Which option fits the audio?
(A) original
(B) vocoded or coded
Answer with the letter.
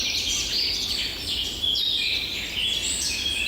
A